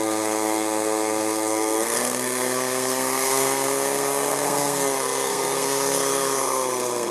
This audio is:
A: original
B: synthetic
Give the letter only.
B